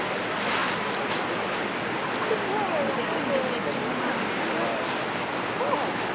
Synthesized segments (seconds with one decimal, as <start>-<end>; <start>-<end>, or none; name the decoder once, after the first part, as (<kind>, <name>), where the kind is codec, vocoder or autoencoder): none